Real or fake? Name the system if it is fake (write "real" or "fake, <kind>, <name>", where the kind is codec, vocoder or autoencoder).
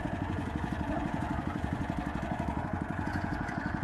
fake, vocoder, Vocos